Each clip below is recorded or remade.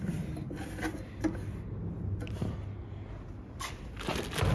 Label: recorded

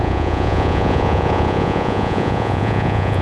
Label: remade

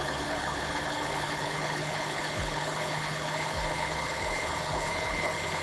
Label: remade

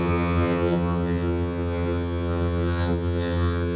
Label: remade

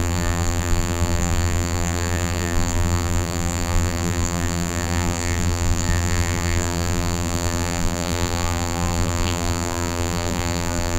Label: remade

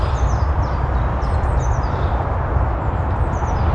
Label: recorded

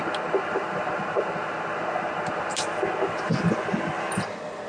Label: recorded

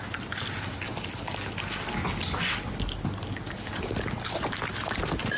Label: recorded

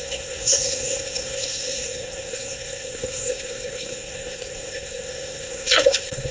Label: remade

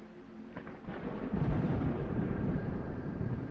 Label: remade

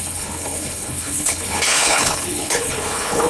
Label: remade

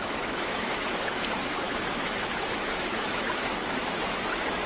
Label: remade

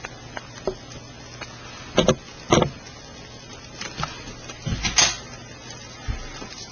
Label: recorded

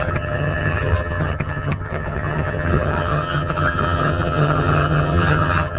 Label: remade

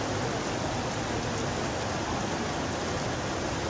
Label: recorded